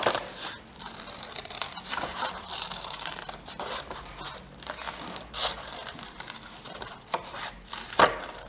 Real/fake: fake